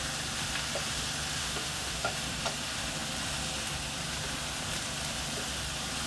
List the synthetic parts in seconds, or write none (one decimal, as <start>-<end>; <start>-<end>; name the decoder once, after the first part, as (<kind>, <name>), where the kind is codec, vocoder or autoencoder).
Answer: 1.4-2.1 (autoencoder, DAC-VAE)